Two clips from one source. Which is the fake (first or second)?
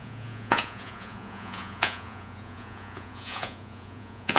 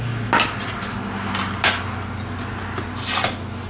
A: first